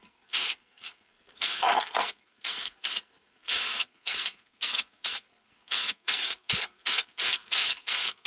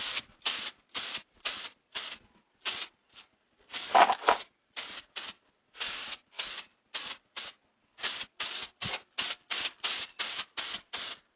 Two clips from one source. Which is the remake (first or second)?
first